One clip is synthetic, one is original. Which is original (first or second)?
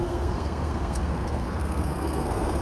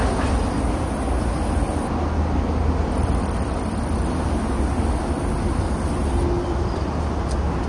second